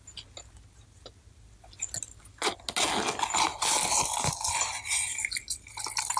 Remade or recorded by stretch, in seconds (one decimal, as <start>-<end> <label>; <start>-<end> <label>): 0.0-6.2 recorded